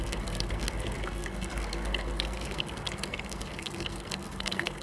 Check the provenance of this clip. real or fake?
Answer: fake